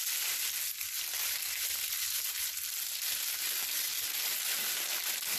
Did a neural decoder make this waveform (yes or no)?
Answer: no